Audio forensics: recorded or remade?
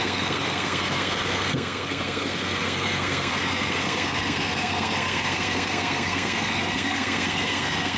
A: remade